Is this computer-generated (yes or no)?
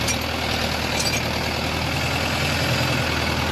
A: no